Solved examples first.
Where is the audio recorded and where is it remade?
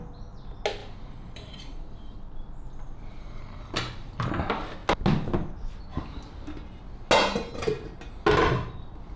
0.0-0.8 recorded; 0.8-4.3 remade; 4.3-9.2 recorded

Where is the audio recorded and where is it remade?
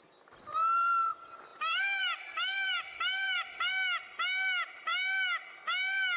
0.0-1.5 recorded; 1.5-3.7 remade; 3.7-6.2 recorded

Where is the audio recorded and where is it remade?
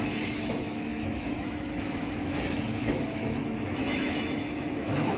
0.0-5.2 remade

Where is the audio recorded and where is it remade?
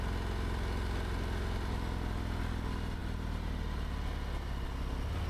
0.0-5.3 recorded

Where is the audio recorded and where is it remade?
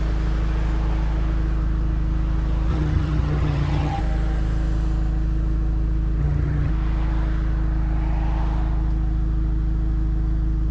0.0-2.7 recorded; 2.7-4.0 remade; 4.0-6.2 recorded; 6.2-6.7 remade; 6.7-10.7 recorded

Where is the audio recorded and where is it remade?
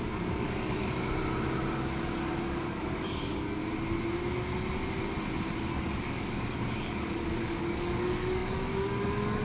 0.0-0.8 remade; 0.8-1.7 recorded; 1.7-3.6 remade; 3.6-5.7 recorded; 5.7-9.4 remade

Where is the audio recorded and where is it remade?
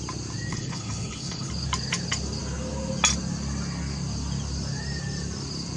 0.0-0.5 recorded; 0.5-1.5 remade; 1.5-5.8 recorded